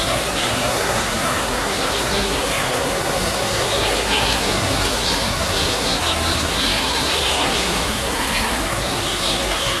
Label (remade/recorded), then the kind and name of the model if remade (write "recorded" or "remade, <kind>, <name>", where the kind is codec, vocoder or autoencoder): remade, codec, SNAC